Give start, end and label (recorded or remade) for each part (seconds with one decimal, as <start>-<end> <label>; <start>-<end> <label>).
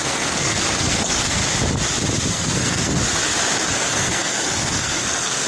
0.0-1.4 remade; 1.4-2.3 recorded; 2.3-3.0 remade; 3.0-3.7 recorded; 3.7-5.5 remade